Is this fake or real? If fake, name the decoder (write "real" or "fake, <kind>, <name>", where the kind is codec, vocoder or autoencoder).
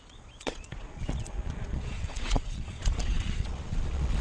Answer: fake, vocoder, Vocos